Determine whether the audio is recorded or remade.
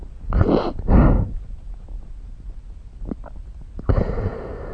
recorded